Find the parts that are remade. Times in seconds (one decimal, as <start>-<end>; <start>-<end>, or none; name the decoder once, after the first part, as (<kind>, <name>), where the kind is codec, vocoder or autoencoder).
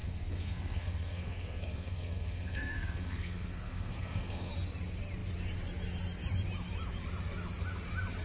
0.0-4.5 (codec, SNAC)